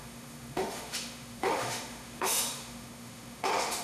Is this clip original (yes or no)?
no